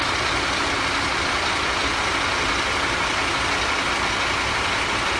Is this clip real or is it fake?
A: real